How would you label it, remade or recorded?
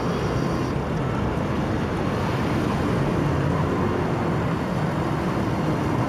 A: recorded